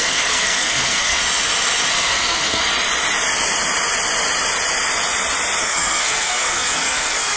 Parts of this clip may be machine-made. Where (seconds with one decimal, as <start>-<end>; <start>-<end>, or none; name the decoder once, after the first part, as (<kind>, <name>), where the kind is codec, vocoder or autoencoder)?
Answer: 0.0-1.2 (codec, SNAC); 1.9-2.6; 5.6-7.4